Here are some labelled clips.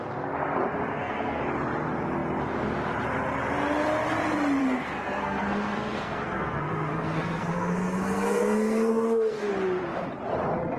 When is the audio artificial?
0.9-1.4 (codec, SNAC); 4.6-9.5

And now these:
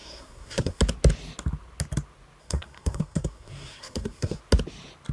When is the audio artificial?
0.0-0.8 (codec, SNAC); 2.4-4.4

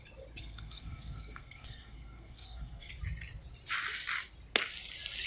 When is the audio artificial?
0.4-2.9 (codec, SNAC)